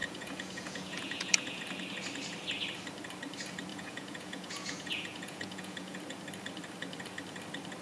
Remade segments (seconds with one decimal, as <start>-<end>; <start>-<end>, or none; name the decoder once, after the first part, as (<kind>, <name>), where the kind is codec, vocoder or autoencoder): 0.0-1.6 (vocoder, Vocos); 3.7-6.0